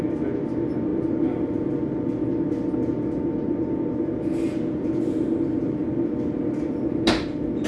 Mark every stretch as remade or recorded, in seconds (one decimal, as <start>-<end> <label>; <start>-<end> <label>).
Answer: 0.0-7.7 recorded